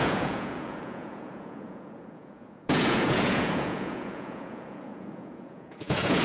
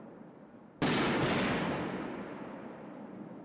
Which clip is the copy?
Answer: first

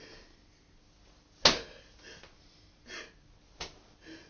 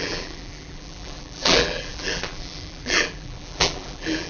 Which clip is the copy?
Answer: second